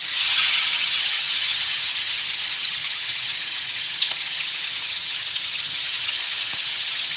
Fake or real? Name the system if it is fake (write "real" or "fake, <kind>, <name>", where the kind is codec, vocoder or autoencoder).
fake, vocoder, HiFi-GAN